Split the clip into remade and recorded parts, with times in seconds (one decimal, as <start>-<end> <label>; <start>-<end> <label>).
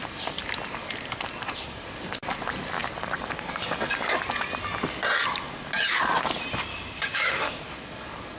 0.0-6.7 recorded; 6.7-7.6 remade; 7.6-8.4 recorded